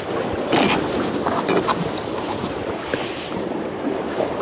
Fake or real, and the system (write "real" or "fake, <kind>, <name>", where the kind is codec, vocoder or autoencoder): real